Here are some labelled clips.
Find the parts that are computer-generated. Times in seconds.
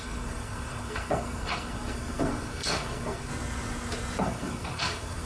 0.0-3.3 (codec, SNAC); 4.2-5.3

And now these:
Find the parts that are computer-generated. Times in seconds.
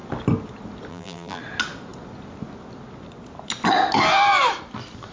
0.9-1.4 (vocoder, BigVGAN v2)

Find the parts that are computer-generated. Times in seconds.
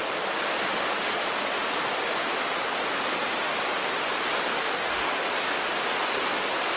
4.6-5.1 (codec, DAC)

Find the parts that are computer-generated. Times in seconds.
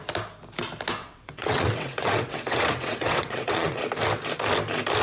1.0-3.8 (vocoder, WaveNeXt)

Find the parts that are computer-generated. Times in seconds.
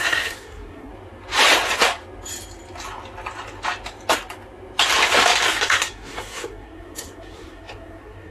0.0-0.9 (codec, SNAC); 5.6-8.3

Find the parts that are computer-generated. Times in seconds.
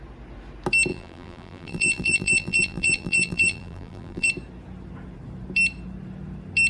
0.9-4.3 (vocoder, BigVGAN v2)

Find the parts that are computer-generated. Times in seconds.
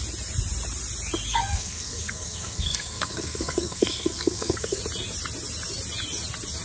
1.3-4.8 (codec, SNAC)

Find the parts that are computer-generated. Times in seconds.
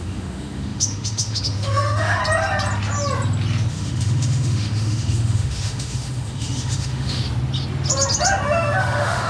0.0-2.2 (autoencoder, DAC-VAE); 3.7-7.2; 8.8-9.3